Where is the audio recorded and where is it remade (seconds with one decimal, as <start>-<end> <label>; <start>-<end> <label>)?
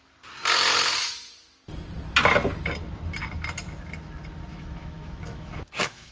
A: 0.0-4.5 recorded; 4.5-6.1 remade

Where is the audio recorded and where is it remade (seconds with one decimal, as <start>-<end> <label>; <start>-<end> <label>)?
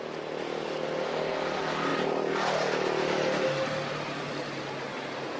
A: 0.0-5.4 recorded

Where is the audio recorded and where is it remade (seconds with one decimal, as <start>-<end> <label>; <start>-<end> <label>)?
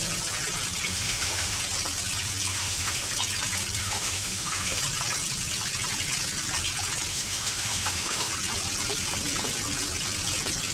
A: 0.0-0.9 recorded; 0.9-1.6 remade; 1.6-2.5 recorded; 2.5-3.1 remade; 3.1-3.8 recorded; 3.8-4.8 remade; 4.8-7.1 recorded; 7.1-8.3 remade; 8.3-10.7 recorded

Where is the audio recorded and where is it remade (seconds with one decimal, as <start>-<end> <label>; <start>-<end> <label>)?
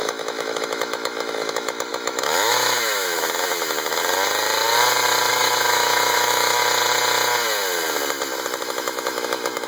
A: 0.0-4.0 remade; 4.0-5.3 recorded; 5.3-6.6 remade; 6.6-8.6 recorded; 8.6-9.7 remade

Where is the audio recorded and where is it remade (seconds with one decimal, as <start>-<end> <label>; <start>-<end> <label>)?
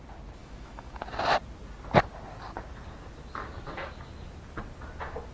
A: 0.0-0.4 recorded; 0.4-0.9 remade; 0.9-5.3 recorded